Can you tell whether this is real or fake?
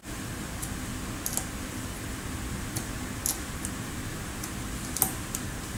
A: real